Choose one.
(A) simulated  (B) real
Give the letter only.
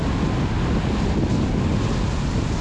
B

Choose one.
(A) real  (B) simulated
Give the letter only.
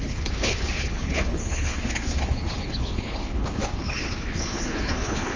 B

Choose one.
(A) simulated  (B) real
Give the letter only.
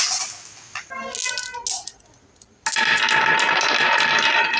B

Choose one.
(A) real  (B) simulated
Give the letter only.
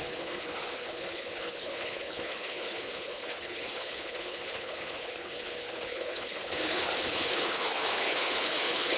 B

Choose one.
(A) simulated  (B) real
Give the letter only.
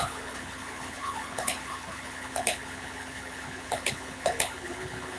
A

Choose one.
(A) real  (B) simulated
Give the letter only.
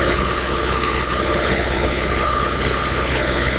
B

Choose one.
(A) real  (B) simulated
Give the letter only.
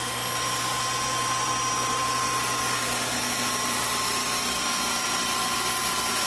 A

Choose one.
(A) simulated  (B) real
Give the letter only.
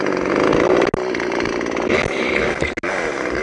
B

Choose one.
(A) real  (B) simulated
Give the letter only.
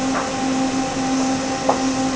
A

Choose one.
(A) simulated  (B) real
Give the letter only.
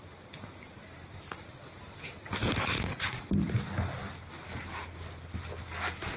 B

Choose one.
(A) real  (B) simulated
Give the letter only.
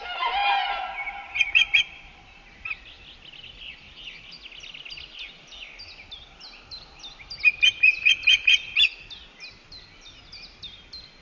A